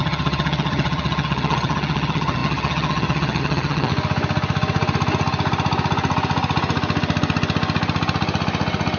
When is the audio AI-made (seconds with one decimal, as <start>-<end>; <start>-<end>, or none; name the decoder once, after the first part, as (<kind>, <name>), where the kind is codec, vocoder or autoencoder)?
0.0-3.9 (vocoder, HiFi-GAN)